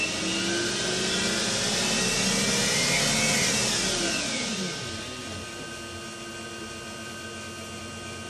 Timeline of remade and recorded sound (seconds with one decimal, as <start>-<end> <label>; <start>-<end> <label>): 0.0-8.3 recorded

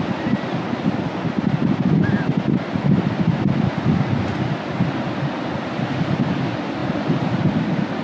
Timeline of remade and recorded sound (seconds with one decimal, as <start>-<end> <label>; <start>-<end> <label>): 0.0-6.8 recorded; 6.8-7.5 remade; 7.5-8.0 recorded

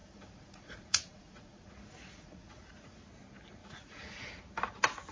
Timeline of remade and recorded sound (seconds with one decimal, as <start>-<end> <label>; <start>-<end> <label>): 0.0-3.0 remade; 3.0-3.6 recorded; 3.6-4.4 remade; 4.4-5.1 recorded

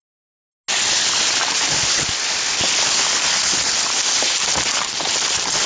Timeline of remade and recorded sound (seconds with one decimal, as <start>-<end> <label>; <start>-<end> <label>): 0.0-5.7 recorded

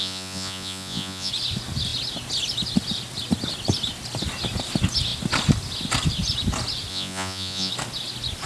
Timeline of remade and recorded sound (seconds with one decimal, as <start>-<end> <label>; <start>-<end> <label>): 0.0-1.3 remade; 1.3-6.9 recorded; 6.9-7.7 remade; 7.7-8.5 recorded

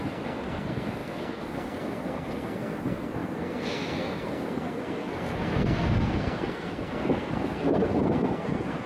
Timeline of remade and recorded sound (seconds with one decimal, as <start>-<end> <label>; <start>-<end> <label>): 0.0-8.9 remade

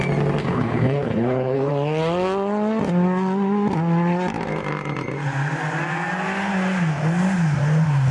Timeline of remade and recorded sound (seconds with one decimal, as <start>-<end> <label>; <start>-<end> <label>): 0.0-0.4 recorded; 0.4-1.7 remade; 1.7-8.1 recorded

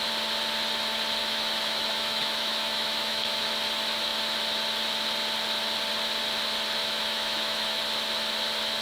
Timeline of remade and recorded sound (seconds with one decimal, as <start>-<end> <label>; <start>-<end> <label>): 0.0-1.2 recorded; 1.2-3.3 remade; 3.3-6.8 recorded; 6.8-7.8 remade; 7.8-8.8 recorded